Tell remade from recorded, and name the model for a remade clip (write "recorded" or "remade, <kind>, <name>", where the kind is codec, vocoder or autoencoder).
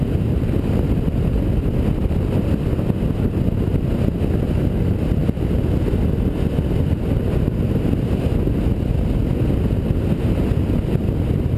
recorded